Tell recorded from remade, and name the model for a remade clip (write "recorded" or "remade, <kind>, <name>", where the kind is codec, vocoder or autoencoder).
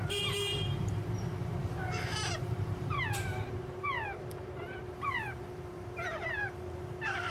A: remade, vocoder, BigVGAN v2